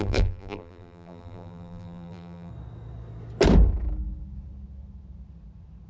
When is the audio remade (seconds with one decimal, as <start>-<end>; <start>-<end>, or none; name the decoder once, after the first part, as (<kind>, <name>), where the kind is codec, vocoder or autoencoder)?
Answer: 0.0-2.5 (vocoder, BigVGAN v2)